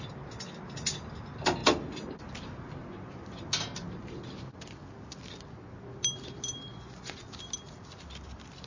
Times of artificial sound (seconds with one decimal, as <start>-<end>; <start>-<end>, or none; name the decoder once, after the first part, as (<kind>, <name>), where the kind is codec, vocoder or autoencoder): 2.8-3.4 (vocoder, Vocos); 6.7-7.2